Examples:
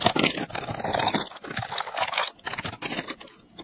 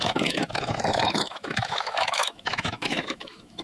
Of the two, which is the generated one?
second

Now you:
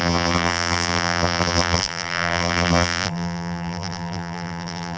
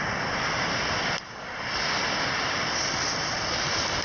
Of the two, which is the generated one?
first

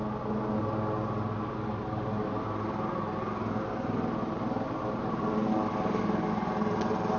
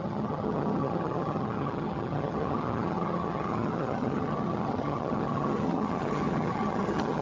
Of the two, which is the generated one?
second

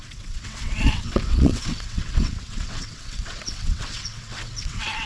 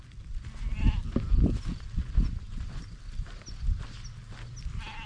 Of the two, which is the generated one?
first